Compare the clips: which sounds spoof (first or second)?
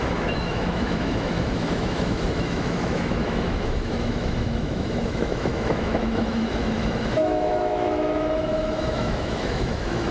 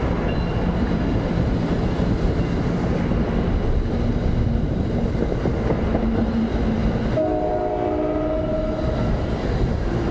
first